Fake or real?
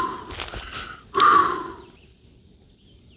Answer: real